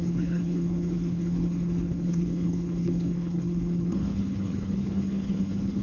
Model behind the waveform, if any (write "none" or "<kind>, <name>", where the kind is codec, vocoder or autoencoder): codec, HILCodec